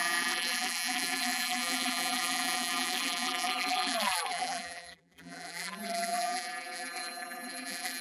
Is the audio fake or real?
fake